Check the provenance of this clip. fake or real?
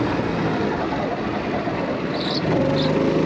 real